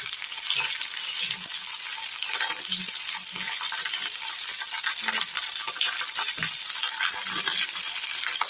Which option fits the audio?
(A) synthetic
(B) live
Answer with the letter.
B